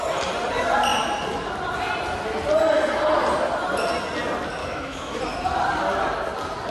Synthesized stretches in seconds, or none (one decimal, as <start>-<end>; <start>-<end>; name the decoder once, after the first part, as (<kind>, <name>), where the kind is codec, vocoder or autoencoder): 4.6-5.2 (autoencoder, DAC-VAE)